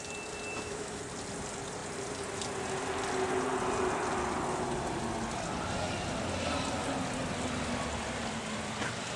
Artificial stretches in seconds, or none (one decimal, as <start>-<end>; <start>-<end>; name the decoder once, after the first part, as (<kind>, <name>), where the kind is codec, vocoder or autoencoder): 0.5-1.0 (autoencoder, DAC-VAE)